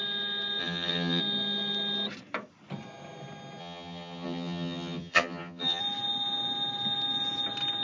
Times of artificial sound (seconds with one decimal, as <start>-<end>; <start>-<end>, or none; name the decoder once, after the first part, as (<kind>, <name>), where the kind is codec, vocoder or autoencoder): 0.6-1.2 (vocoder, HiFi-GAN); 3.6-5.8